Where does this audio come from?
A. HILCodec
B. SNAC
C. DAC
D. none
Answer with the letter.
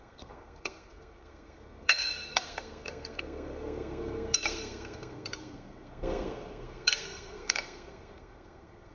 B